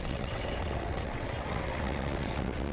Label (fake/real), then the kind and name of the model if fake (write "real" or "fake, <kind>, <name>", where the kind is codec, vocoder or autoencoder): fake, vocoder, WaveNeXt